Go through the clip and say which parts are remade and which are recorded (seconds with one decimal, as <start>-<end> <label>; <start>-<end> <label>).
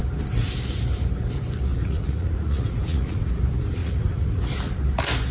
0.0-1.8 recorded; 1.8-3.4 remade; 3.4-3.8 recorded; 3.8-4.4 remade; 4.4-5.3 recorded